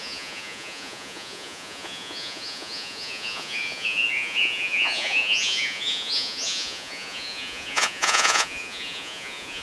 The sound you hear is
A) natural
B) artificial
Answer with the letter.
B